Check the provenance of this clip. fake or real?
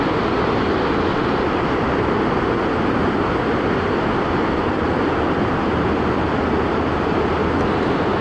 real